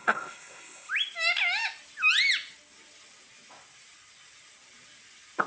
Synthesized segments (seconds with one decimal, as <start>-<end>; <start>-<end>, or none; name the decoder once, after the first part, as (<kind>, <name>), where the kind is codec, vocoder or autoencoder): 0.0-0.9 (codec, ZipCodec)